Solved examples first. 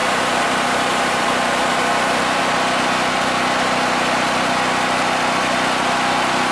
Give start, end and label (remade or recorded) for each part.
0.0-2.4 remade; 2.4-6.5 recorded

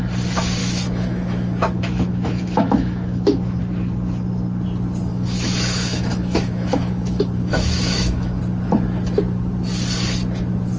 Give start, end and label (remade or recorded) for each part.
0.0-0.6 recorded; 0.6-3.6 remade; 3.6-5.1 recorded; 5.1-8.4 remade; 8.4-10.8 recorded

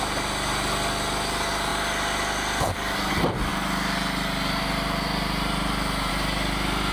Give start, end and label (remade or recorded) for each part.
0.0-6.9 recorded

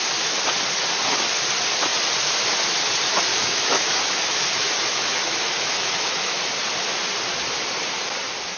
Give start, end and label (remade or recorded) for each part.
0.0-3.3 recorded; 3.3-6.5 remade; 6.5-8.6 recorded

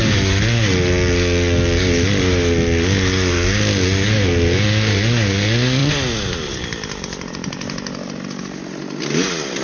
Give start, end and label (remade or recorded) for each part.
0.0-9.6 recorded

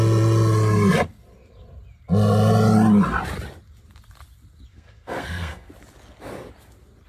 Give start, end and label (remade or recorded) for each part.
0.0-4.7 recorded; 4.7-5.7 remade; 5.7-7.1 recorded